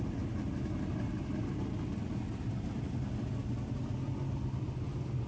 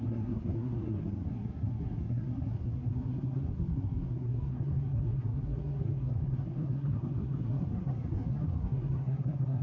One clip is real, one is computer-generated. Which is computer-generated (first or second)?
second